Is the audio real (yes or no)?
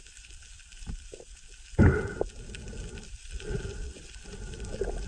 yes